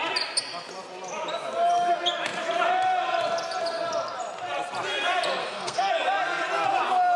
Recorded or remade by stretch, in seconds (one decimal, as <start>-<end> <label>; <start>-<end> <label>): 0.0-5.4 recorded; 5.4-5.9 remade; 5.9-7.2 recorded